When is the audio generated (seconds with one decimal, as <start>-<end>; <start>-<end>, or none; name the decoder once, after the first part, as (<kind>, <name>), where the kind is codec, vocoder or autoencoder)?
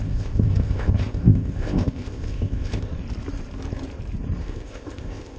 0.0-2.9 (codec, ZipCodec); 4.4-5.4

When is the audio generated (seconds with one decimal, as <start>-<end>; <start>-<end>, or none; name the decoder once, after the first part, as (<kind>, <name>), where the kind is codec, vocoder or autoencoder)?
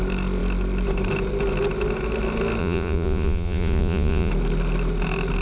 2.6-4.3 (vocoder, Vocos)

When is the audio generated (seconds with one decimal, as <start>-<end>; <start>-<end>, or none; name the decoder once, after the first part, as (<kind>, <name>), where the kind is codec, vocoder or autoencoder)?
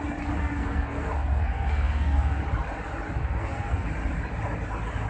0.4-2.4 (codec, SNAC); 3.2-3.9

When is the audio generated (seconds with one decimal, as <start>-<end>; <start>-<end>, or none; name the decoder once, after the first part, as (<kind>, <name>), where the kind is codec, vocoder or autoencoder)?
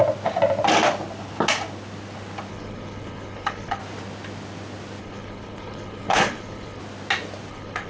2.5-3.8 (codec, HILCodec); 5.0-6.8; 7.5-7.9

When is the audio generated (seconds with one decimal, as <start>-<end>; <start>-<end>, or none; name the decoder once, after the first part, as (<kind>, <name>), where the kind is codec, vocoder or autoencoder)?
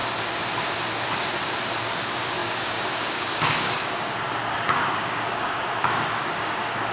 2.0-6.9 (codec, DAC)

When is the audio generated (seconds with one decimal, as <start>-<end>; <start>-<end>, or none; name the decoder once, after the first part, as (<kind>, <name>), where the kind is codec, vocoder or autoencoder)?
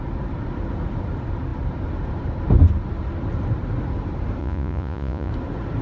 4.4-5.3 (vocoder, Vocos)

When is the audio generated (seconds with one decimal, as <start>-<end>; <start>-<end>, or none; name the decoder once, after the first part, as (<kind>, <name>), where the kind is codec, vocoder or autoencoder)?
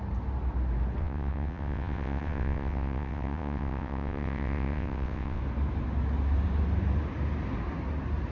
1.0-5.4 (vocoder, WaveNeXt)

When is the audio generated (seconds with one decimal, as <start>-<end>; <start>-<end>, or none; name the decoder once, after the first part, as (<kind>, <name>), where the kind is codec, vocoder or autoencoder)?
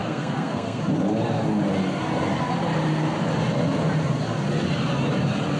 0.0-0.8 (codec, SNAC)